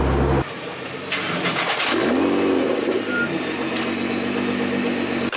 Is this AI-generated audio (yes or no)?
no